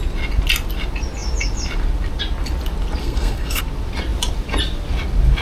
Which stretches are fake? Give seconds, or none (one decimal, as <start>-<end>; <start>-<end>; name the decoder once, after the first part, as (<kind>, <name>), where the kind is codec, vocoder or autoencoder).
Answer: 3.0-3.6 (codec, SNAC)